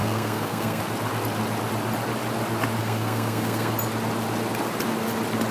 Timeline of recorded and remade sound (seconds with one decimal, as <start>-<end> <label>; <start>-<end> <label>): 0.0-0.8 remade; 0.8-2.8 recorded; 2.8-3.7 remade; 3.7-5.5 recorded